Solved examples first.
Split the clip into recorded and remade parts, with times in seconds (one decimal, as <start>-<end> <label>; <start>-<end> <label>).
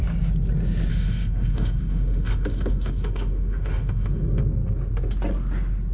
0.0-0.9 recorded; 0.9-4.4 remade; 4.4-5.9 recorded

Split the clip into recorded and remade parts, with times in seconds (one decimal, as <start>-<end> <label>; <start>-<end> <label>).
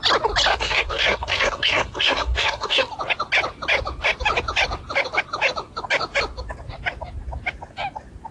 0.0-0.5 recorded; 0.5-2.9 remade; 2.9-8.3 recorded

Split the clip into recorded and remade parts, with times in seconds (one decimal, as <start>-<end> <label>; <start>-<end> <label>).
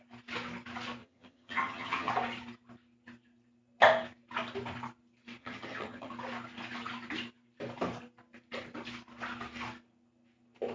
0.0-1.0 recorded; 1.0-2.1 remade; 2.1-5.4 recorded; 5.4-6.1 remade; 6.1-10.7 recorded